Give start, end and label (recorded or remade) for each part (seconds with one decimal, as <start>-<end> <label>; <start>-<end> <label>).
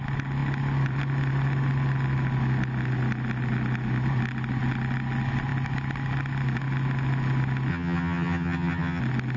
0.0-7.7 recorded; 7.7-9.0 remade; 9.0-9.4 recorded